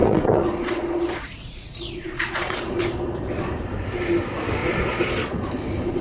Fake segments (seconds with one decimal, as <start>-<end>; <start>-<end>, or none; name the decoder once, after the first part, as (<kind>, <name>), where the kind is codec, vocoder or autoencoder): 0.0-3.6 (vocoder, Vocos); 4.6-6.0